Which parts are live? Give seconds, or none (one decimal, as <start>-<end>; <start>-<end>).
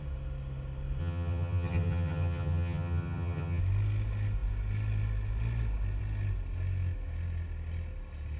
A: 0.0-1.0; 3.6-8.4